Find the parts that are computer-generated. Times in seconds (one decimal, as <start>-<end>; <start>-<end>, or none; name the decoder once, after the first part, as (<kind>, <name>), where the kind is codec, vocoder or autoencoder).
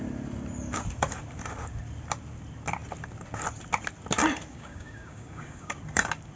4.5-5.8 (codec, DAC)